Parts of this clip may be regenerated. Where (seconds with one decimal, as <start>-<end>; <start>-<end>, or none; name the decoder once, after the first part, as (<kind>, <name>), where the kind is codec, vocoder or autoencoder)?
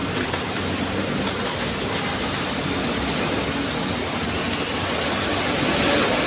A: none